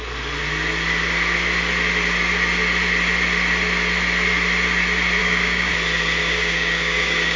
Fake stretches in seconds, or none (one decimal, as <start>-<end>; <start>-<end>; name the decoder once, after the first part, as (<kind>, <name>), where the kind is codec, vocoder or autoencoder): 5.2-5.7 (codec, DAC); 6.2-7.4